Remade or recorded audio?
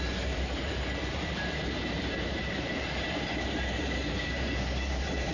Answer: remade